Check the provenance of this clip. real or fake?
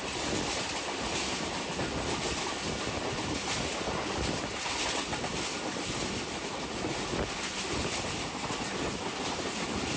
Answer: real